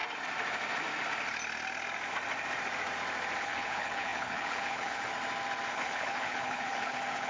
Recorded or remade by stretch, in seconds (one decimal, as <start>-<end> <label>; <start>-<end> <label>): 0.0-3.4 recorded; 3.4-5.1 remade; 5.1-5.7 recorded; 5.7-7.3 remade